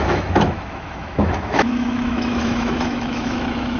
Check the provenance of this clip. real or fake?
fake